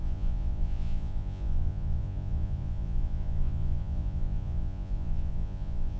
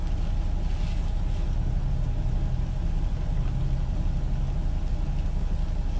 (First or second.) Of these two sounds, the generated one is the first